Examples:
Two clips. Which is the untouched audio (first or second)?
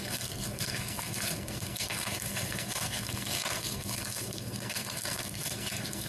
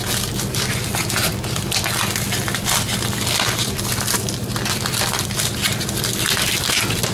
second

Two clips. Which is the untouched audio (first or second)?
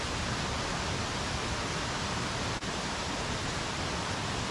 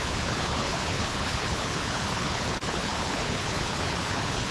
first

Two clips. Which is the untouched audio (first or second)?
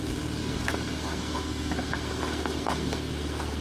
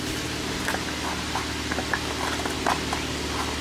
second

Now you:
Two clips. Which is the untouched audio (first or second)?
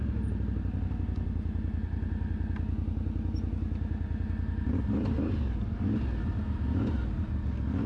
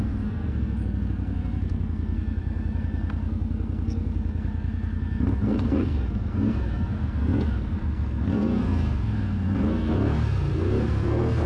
first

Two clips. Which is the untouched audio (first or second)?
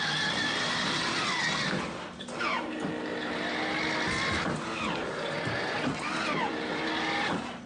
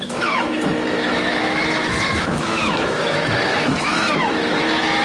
first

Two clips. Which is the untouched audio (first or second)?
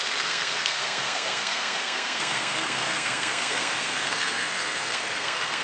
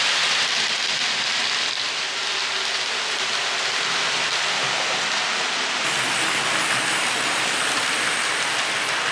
second